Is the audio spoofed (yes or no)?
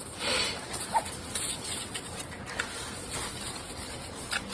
no